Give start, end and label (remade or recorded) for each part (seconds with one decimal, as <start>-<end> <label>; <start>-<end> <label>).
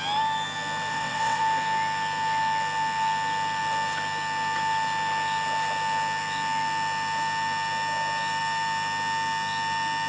0.0-0.9 recorded; 0.9-1.4 remade; 1.4-10.1 recorded